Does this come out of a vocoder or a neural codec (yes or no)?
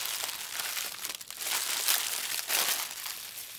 no